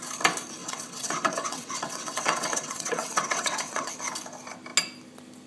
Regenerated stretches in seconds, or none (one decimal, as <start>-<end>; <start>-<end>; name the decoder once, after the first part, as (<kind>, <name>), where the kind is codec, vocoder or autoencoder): 0.6-3.9 (vocoder, WaveNeXt)